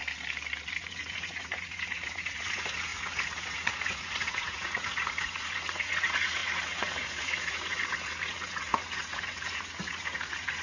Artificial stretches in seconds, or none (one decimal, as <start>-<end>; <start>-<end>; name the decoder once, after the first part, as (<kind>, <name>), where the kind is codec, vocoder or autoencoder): 0.7-10.6 (vocoder, Vocos)